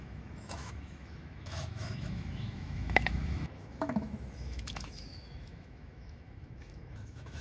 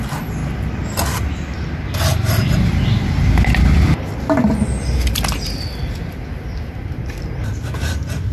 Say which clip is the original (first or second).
second